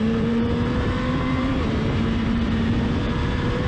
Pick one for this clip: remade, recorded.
remade